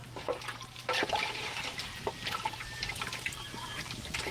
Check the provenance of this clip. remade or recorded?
remade